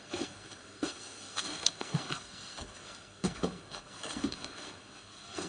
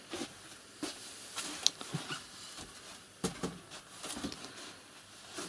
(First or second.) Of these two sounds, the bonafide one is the second